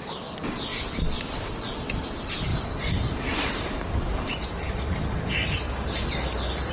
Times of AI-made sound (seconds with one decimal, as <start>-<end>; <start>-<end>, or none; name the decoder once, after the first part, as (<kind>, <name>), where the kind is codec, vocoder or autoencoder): 2.5-6.7 (vocoder, BigVGAN v2)